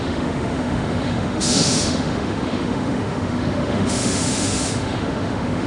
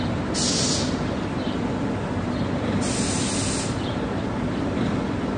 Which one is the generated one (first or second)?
first